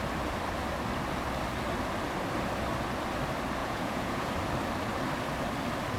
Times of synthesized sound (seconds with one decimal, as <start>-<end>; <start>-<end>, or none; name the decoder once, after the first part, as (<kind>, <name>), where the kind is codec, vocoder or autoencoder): 3.6-4.3 (vocoder, Vocos)

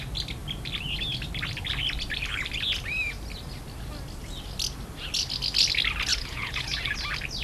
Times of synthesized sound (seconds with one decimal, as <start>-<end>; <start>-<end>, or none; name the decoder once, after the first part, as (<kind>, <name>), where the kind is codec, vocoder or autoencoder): 6.1-6.8 (vocoder, Vocos)

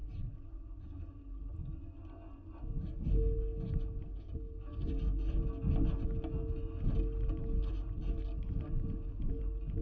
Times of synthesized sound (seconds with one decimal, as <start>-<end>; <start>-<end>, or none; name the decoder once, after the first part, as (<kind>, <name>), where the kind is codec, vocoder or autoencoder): none

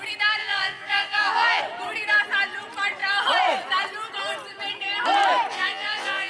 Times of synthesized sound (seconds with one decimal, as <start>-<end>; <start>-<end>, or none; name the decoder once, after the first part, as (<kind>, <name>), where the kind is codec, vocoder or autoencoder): 0.4-1.6 (vocoder, Vocos); 5.5-6.3

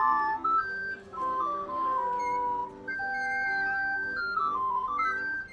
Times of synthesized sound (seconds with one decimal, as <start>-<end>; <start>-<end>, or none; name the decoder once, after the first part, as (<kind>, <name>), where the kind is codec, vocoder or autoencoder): none

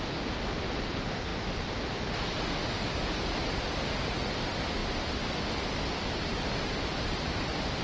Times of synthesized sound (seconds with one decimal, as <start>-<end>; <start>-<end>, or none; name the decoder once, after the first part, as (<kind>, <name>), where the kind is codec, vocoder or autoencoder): none

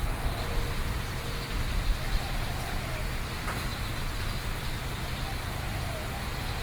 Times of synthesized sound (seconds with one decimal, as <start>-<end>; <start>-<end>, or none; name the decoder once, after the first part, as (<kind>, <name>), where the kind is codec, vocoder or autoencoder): none

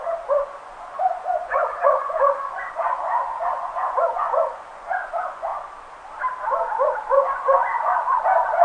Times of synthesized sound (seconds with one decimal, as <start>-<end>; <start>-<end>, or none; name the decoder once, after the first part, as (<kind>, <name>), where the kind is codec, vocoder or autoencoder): 0.0-5.5 (vocoder, Vocos); 7.0-7.9